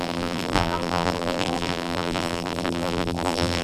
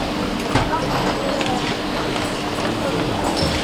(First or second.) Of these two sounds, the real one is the second